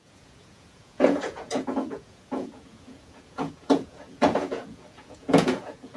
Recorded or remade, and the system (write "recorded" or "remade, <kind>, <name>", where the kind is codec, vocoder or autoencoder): remade, vocoder, Vocos